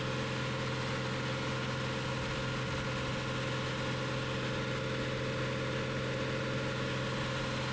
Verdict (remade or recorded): recorded